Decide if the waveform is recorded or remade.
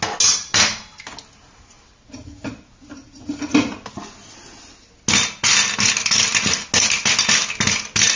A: recorded